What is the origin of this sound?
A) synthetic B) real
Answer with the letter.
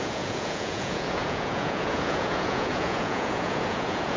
A